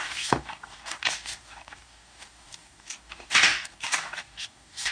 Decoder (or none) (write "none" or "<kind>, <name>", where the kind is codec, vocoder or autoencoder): codec, DAC